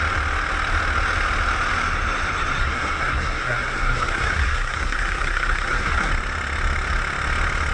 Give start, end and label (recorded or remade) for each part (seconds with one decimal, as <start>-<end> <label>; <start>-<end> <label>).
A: 0.0-2.6 recorded; 2.6-6.1 remade; 6.1-7.7 recorded